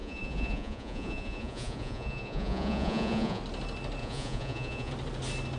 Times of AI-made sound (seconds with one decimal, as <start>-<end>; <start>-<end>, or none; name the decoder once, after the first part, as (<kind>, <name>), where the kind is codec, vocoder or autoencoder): 0.0-3.4 (vocoder, Vocos); 4.0-4.9